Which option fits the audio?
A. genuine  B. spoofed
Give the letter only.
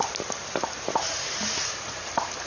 B